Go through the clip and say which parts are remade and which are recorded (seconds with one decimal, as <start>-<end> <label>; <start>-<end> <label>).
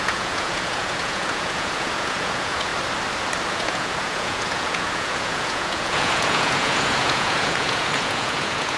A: 0.0-2.7 remade; 2.7-3.5 recorded; 3.5-8.8 remade